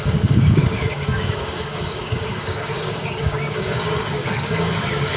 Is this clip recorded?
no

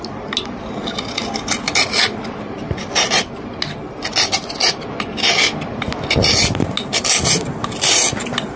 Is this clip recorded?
yes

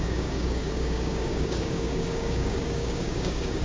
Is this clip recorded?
no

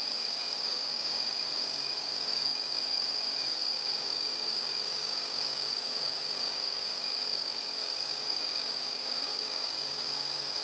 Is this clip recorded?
no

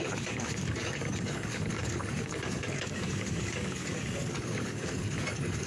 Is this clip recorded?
no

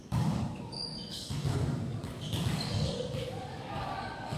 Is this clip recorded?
no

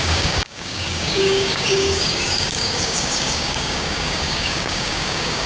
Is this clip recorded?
no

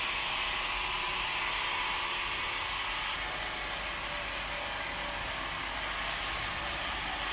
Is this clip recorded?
yes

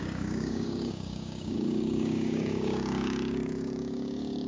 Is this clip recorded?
no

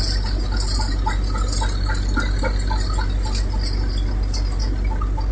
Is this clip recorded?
yes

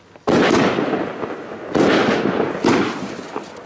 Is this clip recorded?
yes